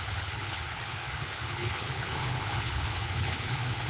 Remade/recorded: remade